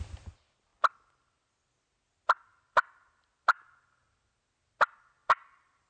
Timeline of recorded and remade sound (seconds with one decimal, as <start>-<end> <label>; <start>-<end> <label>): 0.0-5.2 recorded; 5.2-5.9 remade